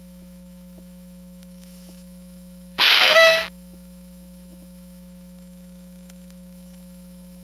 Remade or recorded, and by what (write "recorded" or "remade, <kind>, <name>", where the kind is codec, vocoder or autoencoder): remade, autoencoder, DAC-VAE